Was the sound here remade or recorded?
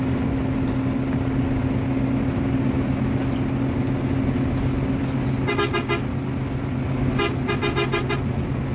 recorded